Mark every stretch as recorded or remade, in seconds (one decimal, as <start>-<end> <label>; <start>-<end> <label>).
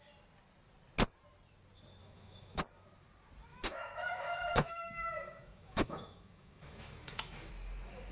0.0-2.0 recorded; 2.0-2.6 remade; 2.6-3.5 recorded; 3.5-7.5 remade; 7.5-8.1 recorded